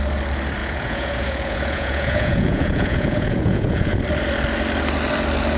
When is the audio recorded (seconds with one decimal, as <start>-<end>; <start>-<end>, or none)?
0.0-0.6; 4.0-5.6